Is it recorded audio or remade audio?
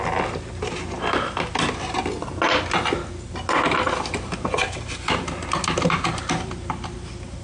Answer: recorded